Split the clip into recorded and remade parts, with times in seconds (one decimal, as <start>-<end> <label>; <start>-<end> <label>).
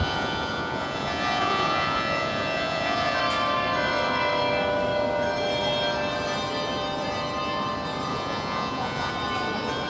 0.0-3.2 remade; 3.2-8.1 recorded; 8.1-9.1 remade; 9.1-9.9 recorded